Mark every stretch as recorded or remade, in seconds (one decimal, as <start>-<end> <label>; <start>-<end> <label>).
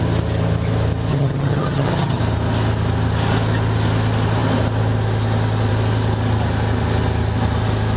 0.0-1.1 recorded; 1.1-2.2 remade; 2.2-8.0 recorded